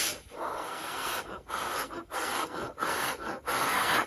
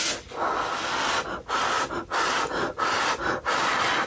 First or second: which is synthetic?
first